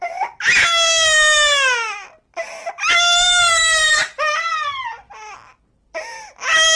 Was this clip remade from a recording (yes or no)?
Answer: no